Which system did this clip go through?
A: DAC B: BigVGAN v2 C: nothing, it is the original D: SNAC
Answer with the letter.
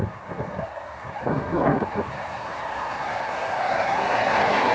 D